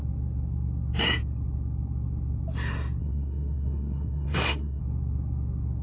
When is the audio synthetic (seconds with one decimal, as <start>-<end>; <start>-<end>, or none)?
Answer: 3.0-4.8